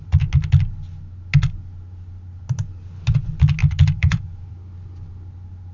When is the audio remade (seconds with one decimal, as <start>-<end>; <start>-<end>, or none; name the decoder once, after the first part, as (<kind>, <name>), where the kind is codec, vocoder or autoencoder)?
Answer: 3.6-4.5 (vocoder, BigVGAN v2)

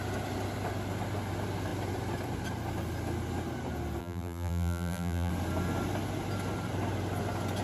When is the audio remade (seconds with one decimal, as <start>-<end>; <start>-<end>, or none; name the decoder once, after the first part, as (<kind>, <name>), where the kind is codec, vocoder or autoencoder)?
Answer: 4.0-5.3 (vocoder, BigVGAN v2)

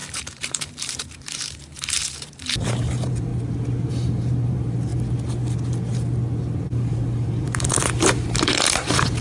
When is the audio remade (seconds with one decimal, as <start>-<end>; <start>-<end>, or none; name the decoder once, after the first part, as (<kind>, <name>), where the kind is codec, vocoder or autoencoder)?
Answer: 0.0-3.3 (vocoder, BigVGAN v2); 3.9-4.9; 6.6-9.2

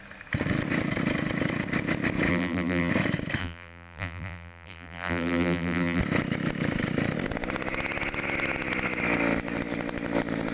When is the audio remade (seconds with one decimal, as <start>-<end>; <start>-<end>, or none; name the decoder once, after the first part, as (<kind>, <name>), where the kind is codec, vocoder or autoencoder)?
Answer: 2.3-2.9 (vocoder, BigVGAN v2); 3.4-6.0